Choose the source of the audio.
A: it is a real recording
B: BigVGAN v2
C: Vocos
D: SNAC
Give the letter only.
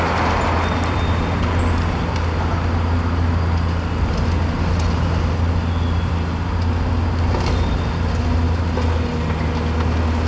A